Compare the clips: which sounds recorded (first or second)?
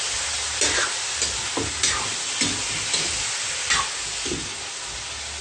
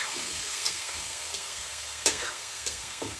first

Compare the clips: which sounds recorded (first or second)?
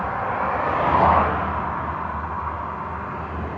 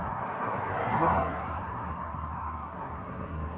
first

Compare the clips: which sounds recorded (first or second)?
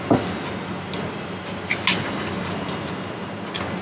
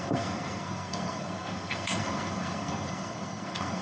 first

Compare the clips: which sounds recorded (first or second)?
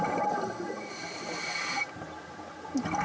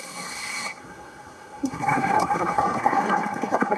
first